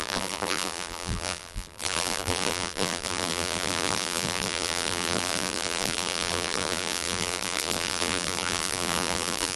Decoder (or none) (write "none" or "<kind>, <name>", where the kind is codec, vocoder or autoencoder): vocoder, BigVGAN v2